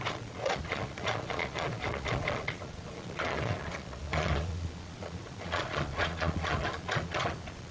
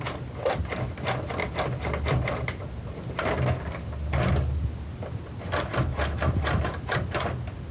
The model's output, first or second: first